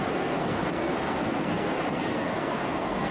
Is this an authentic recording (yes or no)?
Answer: no